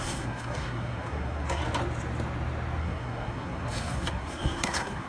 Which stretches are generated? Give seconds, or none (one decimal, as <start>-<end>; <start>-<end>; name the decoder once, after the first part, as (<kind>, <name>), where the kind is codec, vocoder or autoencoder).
0.0-1.6 (codec, SNAC); 2.8-5.1